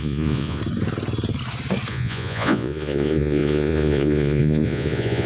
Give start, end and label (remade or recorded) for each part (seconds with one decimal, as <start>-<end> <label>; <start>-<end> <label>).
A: 0.0-0.6 remade; 0.6-1.9 recorded; 1.9-5.3 remade

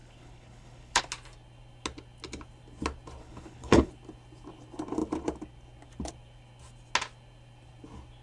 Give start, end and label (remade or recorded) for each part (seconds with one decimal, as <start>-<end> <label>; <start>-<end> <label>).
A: 0.0-1.0 remade; 1.0-3.2 recorded; 3.2-3.9 remade; 3.9-8.2 recorded

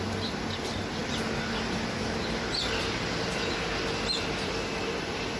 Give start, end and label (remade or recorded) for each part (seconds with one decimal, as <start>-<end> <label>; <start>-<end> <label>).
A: 0.0-5.4 recorded